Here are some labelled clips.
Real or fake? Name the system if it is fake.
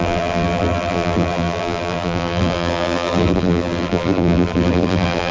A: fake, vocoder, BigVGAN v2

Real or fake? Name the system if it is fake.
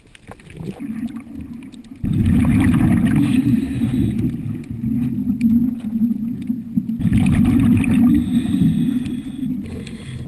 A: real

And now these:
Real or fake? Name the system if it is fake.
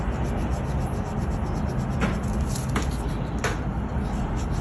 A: real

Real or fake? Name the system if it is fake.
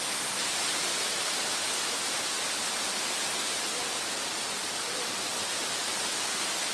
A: real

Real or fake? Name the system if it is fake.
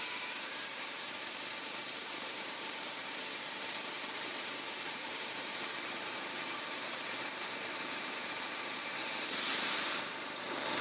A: fake, vocoder, BigVGAN v2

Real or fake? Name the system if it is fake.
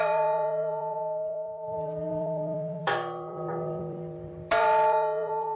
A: fake, vocoder, BigVGAN v2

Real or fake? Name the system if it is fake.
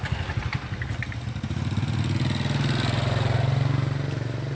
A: real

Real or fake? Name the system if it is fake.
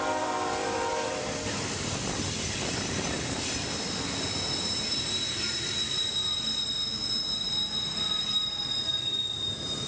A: fake, vocoder, BigVGAN v2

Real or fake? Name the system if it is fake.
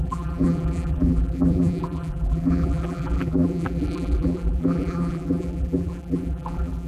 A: fake, vocoder, BigVGAN v2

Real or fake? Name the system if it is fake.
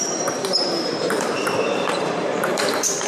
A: fake, vocoder, BigVGAN v2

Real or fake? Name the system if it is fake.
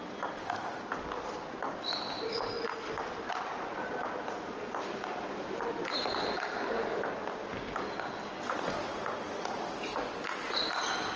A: real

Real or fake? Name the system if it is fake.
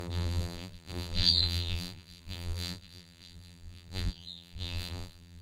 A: fake, vocoder, BigVGAN v2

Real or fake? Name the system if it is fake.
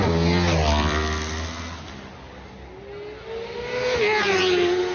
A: real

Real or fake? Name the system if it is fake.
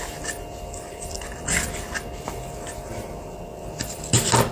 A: real